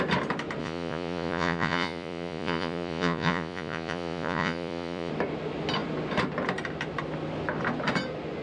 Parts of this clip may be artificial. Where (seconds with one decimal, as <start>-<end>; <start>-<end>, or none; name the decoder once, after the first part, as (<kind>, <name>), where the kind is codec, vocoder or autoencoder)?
0.6-5.1 (vocoder, Vocos)